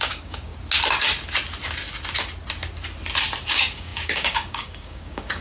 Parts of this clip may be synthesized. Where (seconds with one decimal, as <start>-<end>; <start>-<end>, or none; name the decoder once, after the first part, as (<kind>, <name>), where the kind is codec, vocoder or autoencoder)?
0.0-0.5 (codec, DAC); 3.5-5.4